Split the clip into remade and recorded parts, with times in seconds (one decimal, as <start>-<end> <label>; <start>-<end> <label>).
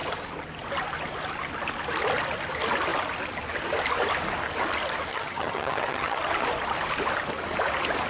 0.0-5.1 recorded; 5.1-6.2 remade; 6.2-8.1 recorded